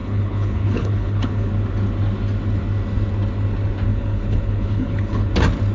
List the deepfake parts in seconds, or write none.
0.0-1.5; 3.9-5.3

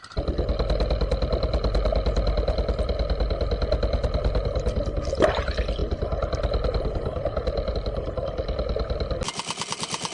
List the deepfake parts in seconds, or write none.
none

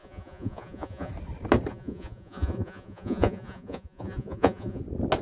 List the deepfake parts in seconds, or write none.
0.0-1.1; 1.7-4.8

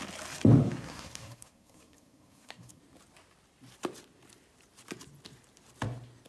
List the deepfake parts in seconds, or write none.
0.6-2.8

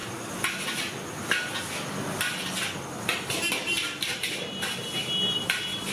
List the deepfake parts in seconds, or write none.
3.5-5.9